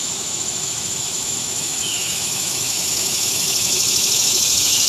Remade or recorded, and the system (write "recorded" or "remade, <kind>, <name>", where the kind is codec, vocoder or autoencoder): remade, autoencoder, DAC-VAE